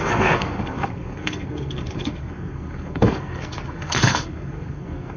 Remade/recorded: remade